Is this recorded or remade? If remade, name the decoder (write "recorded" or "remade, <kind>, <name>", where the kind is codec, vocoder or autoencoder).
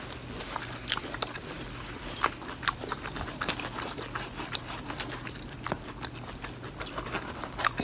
recorded